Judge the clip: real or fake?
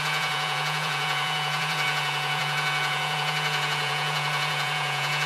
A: fake